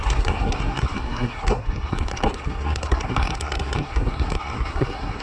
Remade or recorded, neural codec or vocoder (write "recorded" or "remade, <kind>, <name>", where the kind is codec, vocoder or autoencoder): remade, codec, SNAC